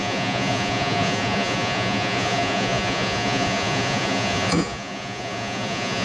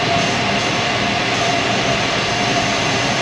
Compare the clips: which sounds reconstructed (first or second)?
first